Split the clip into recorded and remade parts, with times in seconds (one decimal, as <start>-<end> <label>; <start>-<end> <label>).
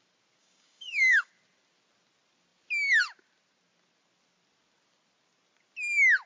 0.0-0.4 recorded; 0.4-1.3 remade; 1.3-6.3 recorded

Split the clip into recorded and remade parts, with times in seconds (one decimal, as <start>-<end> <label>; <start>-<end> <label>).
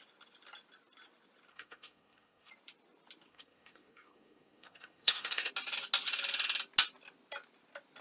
0.0-1.5 recorded; 1.5-2.5 remade; 2.5-3.3 recorded; 3.3-5.5 remade; 5.5-8.0 recorded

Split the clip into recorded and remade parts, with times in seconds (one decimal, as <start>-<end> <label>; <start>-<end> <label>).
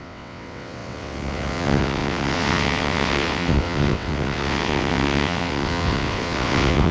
0.0-6.9 remade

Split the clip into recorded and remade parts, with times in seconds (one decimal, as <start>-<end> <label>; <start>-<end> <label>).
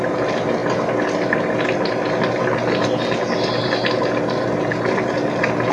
0.0-5.7 recorded